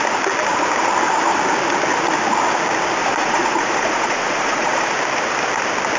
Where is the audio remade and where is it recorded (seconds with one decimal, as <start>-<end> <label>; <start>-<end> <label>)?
0.0-3.0 recorded; 3.0-4.9 remade; 4.9-6.0 recorded